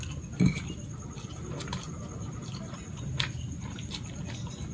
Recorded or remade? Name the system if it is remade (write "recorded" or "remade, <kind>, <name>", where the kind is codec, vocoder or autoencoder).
recorded